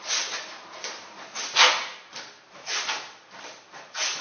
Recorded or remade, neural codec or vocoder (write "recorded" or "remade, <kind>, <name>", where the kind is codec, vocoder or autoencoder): recorded